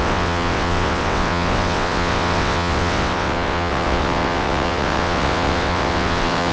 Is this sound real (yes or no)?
no